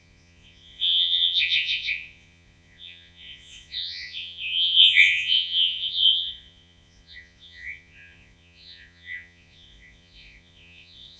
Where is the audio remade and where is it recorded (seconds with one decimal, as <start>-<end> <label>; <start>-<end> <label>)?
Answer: 0.0-11.2 remade